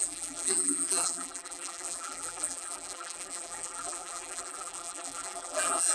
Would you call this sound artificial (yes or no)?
yes